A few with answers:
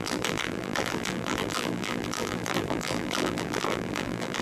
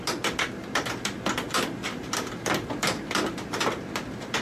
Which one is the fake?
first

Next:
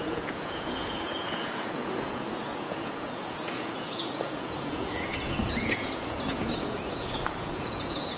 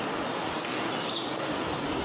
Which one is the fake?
first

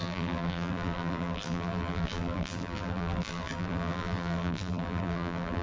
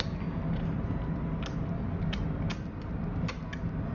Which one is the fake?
first